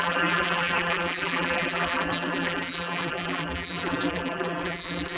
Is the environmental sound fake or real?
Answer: fake